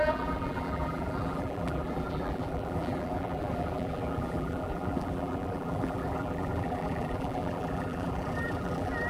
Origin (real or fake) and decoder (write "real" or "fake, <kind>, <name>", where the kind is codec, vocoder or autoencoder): fake, vocoder, BigVGAN v2